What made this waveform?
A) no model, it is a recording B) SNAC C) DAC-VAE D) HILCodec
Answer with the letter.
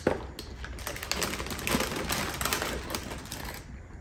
A